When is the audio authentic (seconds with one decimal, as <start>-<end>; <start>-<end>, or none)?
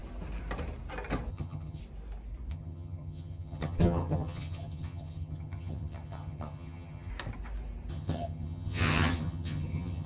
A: 0.0-1.3; 1.8-2.5; 7.1-7.9